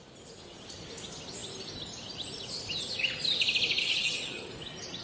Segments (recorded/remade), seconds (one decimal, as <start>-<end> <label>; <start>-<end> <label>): 0.0-3.8 recorded; 3.8-4.5 remade; 4.5-5.0 recorded